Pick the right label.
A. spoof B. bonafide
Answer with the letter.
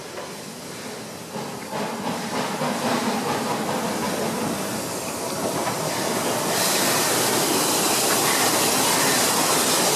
B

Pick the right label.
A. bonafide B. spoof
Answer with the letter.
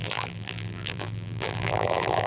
B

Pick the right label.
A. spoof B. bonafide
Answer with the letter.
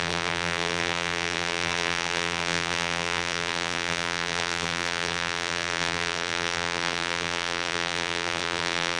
A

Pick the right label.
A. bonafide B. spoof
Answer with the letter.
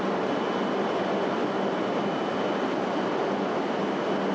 A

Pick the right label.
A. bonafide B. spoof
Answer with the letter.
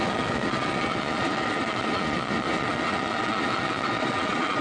B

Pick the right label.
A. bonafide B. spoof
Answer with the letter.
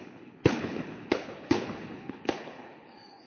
B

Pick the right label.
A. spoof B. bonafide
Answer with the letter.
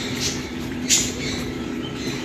A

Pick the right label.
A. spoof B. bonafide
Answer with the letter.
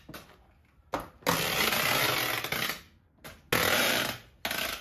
B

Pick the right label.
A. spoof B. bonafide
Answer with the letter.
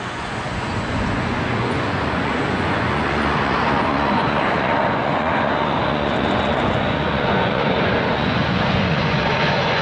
A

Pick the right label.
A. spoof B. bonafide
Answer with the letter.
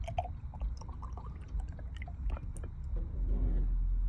B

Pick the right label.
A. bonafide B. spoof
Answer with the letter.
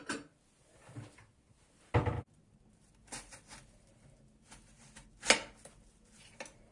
A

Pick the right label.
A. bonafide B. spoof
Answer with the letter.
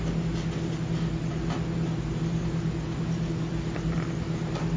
A